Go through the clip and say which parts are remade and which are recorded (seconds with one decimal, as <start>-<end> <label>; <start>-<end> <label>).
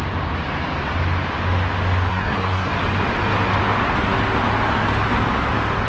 0.0-2.1 recorded; 2.1-2.7 remade; 2.7-5.9 recorded